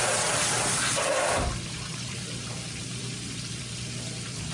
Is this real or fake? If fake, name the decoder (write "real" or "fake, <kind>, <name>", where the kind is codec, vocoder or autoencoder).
fake, vocoder, BigVGAN v2